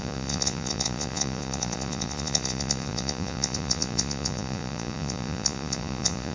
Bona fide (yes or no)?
no